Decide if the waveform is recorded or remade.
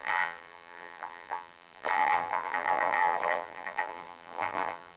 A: remade